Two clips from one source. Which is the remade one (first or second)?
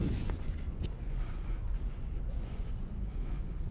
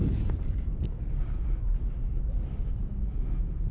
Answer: first